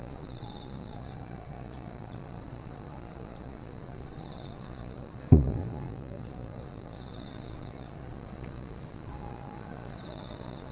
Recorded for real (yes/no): no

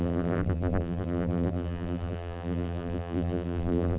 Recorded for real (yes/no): no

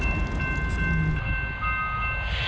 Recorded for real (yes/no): yes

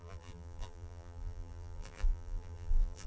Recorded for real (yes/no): no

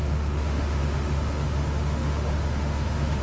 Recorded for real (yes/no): no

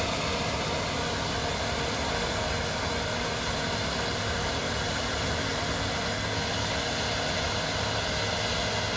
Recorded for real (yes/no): yes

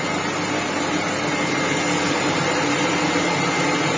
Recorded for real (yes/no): yes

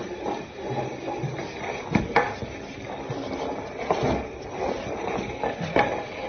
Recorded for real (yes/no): yes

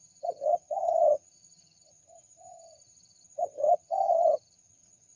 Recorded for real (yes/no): no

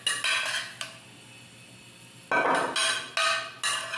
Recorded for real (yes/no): yes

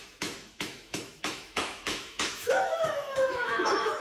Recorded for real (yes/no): no